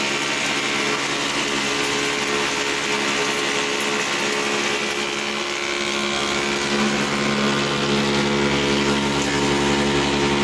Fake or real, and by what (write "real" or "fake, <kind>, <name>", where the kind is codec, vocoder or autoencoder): real